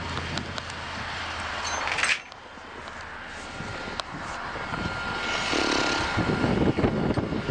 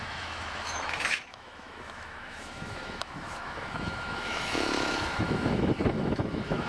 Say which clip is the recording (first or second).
first